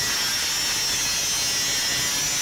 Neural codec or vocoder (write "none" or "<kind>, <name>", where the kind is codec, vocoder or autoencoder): none